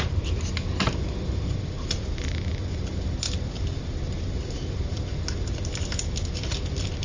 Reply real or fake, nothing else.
real